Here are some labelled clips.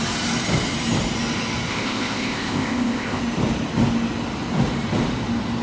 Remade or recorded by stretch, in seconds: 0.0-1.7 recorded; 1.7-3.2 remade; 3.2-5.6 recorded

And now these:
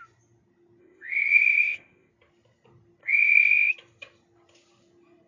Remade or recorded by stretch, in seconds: 0.0-0.8 recorded; 0.8-2.1 remade; 2.1-3.0 recorded; 3.0-3.7 remade; 3.7-5.3 recorded

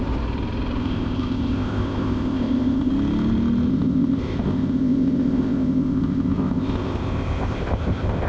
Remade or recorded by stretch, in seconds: 0.0-0.8 recorded; 0.8-2.9 remade; 2.9-3.7 recorded; 3.7-8.3 remade

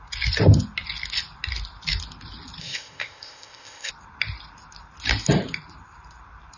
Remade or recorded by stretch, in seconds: 0.0-2.6 recorded; 2.6-3.9 remade; 3.9-6.6 recorded

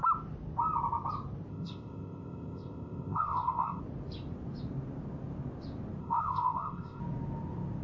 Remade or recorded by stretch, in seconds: 0.0-1.5 recorded; 1.5-3.8 remade; 3.8-6.0 recorded; 6.0-7.0 remade; 7.0-7.8 recorded

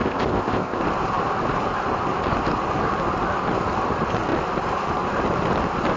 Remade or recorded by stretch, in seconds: 0.0-0.8 remade; 0.8-6.0 recorded

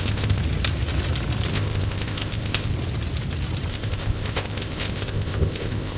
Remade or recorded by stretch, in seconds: 0.0-0.4 remade; 0.4-1.5 recorded; 1.5-2.7 remade; 2.7-3.7 recorded; 3.7-6.0 remade